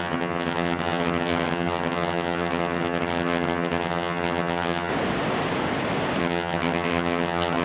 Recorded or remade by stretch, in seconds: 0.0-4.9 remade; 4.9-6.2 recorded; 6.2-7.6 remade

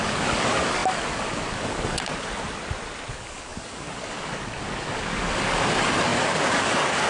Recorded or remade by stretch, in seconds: 0.0-2.1 remade; 2.1-3.1 recorded; 3.1-7.1 remade

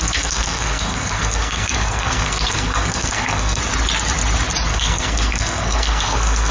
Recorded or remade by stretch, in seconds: 0.0-3.6 remade; 3.6-4.7 recorded; 4.7-6.5 remade